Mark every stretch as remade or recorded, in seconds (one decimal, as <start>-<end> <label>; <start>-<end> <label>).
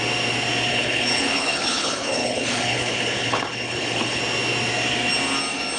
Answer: 0.0-0.7 recorded; 0.7-4.2 remade; 4.2-5.8 recorded